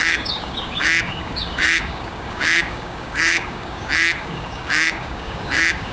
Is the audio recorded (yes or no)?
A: no